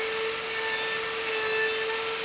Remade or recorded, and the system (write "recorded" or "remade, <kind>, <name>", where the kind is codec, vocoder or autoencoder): recorded